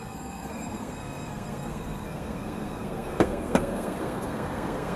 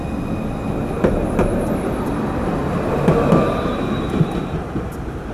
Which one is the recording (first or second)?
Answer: second